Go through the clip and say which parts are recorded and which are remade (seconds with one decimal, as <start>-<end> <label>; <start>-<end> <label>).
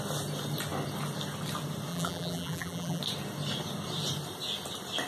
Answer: 0.0-1.9 recorded; 1.9-3.0 remade; 3.0-5.1 recorded